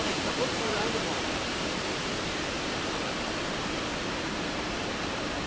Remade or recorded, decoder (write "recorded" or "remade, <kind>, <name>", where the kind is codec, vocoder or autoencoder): remade, vocoder, BigVGAN v2